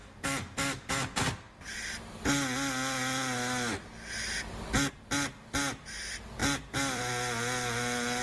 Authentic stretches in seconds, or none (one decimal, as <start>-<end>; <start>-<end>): 0.0-6.4; 7.0-8.2